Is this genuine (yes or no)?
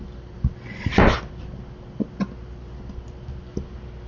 yes